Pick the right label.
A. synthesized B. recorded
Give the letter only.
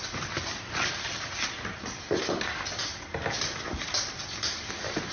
B